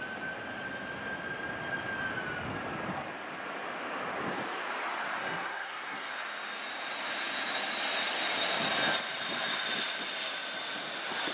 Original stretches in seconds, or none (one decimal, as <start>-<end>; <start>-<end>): 0.0-5.2; 6.1-11.3